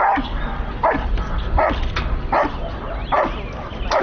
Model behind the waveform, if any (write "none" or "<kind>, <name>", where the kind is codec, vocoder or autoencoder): none